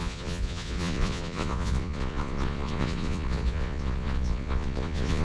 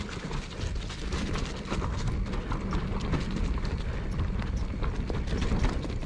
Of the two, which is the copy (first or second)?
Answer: first